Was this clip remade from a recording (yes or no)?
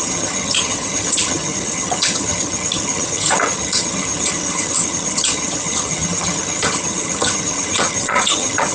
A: yes